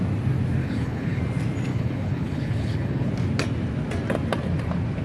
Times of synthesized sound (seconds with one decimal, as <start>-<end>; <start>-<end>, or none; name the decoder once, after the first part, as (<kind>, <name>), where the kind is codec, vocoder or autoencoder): 0.6-1.2 (codec, HILCodec); 1.7-3.1